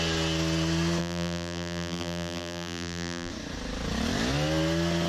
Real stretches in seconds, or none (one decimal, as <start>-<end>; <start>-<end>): 0.0-1.0; 3.3-5.1